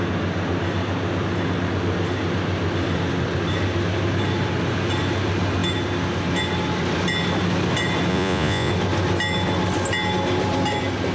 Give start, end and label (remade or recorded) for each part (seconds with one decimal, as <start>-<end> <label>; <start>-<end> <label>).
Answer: 0.0-8.1 recorded; 8.1-8.7 remade; 8.7-11.1 recorded